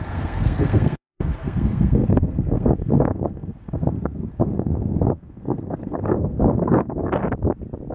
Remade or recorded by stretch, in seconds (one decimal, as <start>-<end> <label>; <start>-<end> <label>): 0.0-7.2 remade; 7.2-7.9 recorded

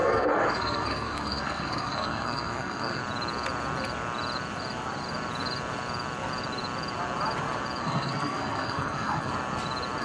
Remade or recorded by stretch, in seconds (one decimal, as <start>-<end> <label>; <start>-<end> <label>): 0.0-3.0 remade; 3.0-7.8 recorded; 7.8-9.3 remade; 9.3-10.0 recorded

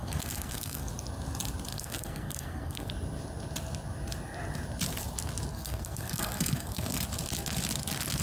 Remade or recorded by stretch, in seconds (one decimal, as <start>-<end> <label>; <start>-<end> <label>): 0.0-0.9 remade; 0.9-1.7 recorded; 1.7-2.9 remade; 2.9-5.5 recorded; 5.5-7.0 remade; 7.0-8.2 recorded

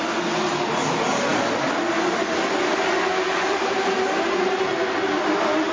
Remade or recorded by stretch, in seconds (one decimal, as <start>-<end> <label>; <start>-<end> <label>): 0.0-5.7 recorded

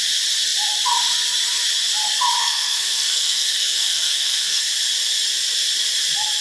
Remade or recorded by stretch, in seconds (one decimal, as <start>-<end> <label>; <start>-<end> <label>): 0.0-2.4 recorded; 2.4-4.6 remade; 4.6-6.4 recorded

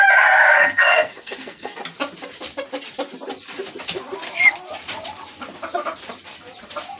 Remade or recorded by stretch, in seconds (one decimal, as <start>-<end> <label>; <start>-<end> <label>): 0.0-0.4 recorded; 0.4-1.8 remade; 1.8-7.0 recorded

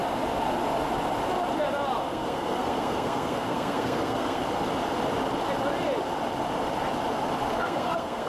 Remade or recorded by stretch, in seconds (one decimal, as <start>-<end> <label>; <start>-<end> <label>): 0.0-2.0 recorded; 2.0-4.4 remade; 4.4-7.5 recorded; 7.5-8.3 remade

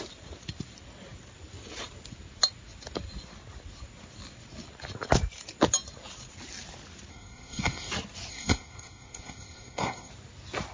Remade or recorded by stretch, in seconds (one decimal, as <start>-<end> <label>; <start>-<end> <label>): 0.0-7.1 recorded; 7.1-7.9 remade; 7.9-8.3 recorded; 8.3-10.1 remade; 10.1-10.7 recorded